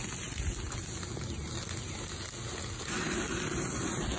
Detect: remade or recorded recorded